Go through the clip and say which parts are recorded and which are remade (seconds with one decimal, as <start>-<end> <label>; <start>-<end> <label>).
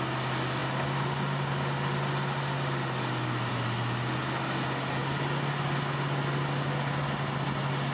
0.0-7.9 recorded